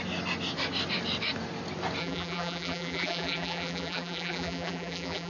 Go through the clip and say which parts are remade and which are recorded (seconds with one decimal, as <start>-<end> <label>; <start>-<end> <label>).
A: 0.0-2.0 recorded; 2.0-5.3 remade